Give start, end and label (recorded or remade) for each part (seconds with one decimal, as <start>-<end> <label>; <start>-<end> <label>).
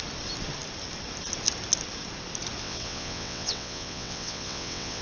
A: 0.0-2.6 recorded; 2.6-5.0 remade